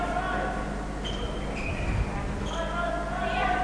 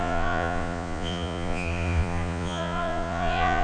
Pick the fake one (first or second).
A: second